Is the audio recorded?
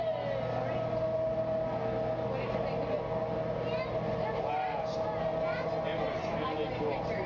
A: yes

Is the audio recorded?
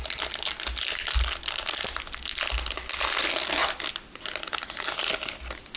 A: yes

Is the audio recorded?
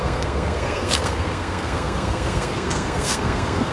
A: no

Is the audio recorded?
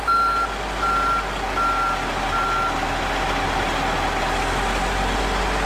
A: yes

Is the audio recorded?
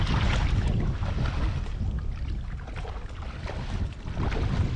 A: yes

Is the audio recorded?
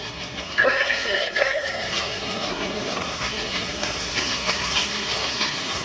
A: no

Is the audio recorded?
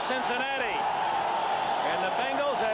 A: yes